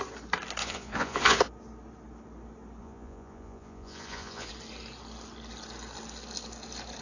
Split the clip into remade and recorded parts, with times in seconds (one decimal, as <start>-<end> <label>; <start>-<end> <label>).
0.0-0.6 recorded; 0.6-1.4 remade; 1.4-2.8 recorded; 2.8-4.5 remade; 4.5-7.0 recorded